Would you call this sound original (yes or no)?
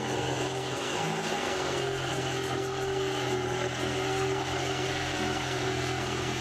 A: no